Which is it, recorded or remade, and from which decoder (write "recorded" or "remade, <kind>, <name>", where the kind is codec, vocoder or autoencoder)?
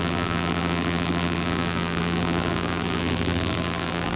remade, vocoder, BigVGAN v2